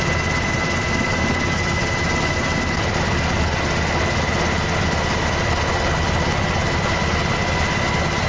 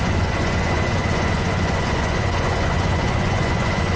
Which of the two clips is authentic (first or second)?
first